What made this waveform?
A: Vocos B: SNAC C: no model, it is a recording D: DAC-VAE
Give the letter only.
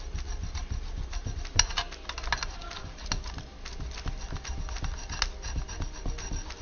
C